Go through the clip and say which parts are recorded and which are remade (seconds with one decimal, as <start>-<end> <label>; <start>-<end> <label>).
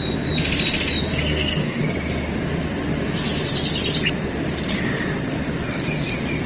0.0-1.1 recorded; 1.1-1.8 remade; 1.8-6.5 recorded